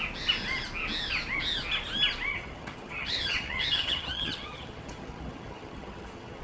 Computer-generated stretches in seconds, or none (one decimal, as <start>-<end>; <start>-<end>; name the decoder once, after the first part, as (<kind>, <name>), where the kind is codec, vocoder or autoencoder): 2.3-6.4 (vocoder, HiFi-GAN)